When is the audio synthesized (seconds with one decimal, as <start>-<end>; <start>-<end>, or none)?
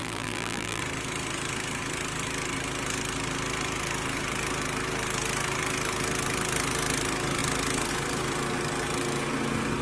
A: 0.0-0.8